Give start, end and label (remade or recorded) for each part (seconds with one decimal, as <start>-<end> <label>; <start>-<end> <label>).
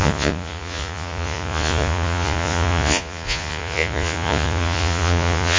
0.0-5.6 remade